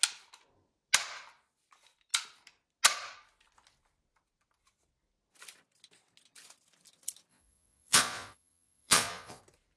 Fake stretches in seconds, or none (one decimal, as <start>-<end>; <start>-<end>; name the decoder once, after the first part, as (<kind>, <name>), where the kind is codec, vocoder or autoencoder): 7.3-9.4 (vocoder, Vocos)